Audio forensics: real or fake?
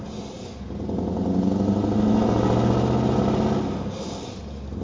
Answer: real